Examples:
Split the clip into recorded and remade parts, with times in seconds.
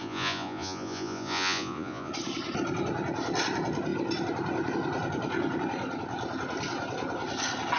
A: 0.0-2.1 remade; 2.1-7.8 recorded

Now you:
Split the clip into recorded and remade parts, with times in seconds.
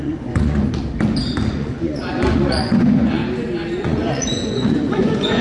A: 0.0-0.8 remade; 0.8-1.5 recorded; 1.5-3.2 remade; 3.2-3.8 recorded; 3.8-5.4 remade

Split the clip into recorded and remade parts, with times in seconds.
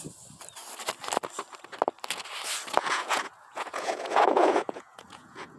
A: 0.0-2.8 recorded; 2.8-5.6 remade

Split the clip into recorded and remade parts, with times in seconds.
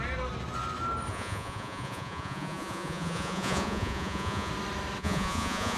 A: 0.0-1.1 recorded; 1.1-4.5 remade; 4.5-5.0 recorded; 5.0-5.8 remade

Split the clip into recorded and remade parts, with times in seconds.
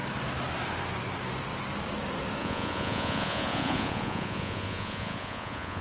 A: 0.0-2.4 recorded; 2.4-5.8 remade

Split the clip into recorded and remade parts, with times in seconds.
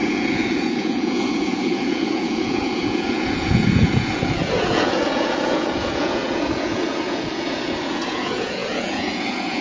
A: 0.0-9.6 remade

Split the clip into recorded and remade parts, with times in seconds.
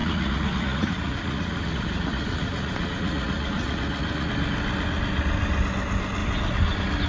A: 0.0-4.3 remade; 4.3-7.1 recorded